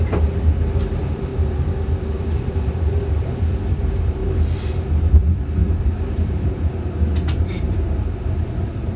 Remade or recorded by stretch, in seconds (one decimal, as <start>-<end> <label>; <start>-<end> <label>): 0.0-1.3 remade; 1.3-2.2 recorded; 2.2-4.2 remade; 4.2-4.9 recorded; 4.9-9.0 remade

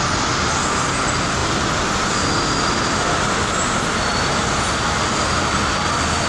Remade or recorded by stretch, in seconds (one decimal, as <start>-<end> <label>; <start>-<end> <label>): 0.0-6.3 recorded